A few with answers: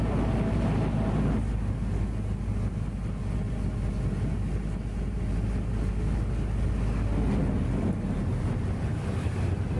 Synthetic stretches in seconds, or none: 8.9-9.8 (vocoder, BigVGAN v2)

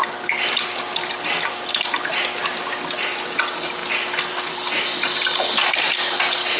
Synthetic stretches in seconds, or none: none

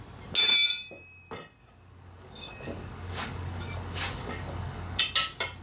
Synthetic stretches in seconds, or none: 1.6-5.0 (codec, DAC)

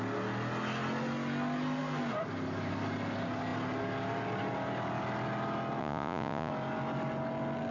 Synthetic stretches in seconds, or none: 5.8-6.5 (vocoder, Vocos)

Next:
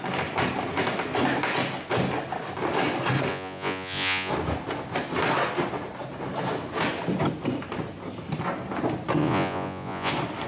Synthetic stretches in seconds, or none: 3.3-4.3 (vocoder, Vocos); 9.2-10.1

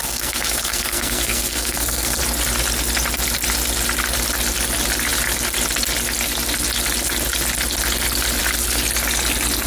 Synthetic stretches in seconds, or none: 0.0-2.2 (codec, SNAC)